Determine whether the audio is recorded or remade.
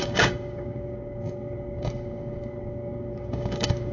remade